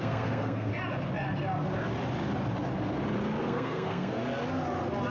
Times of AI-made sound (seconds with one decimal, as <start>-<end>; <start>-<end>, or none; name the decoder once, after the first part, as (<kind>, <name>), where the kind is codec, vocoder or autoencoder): 0.0-0.7 (codec, SNAC); 3.4-4.2

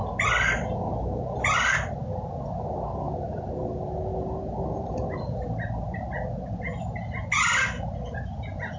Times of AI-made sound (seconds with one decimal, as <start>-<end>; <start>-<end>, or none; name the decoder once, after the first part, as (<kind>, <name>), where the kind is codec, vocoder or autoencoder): none